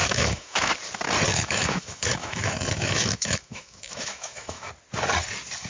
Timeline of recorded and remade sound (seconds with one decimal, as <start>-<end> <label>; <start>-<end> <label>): 0.0-0.7 remade; 0.7-1.3 recorded; 1.3-4.7 remade; 4.7-5.7 recorded